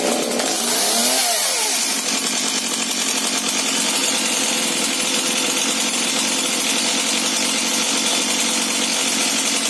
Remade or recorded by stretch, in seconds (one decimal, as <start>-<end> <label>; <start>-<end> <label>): 0.0-9.7 recorded